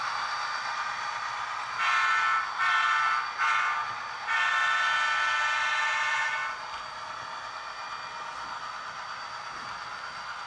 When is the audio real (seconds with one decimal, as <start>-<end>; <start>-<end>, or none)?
0.0-10.5